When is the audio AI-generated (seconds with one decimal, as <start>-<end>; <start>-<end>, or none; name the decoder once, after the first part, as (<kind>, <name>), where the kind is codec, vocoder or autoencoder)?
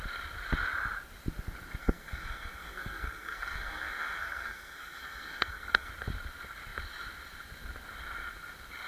1.8-5.9 (codec, SNAC)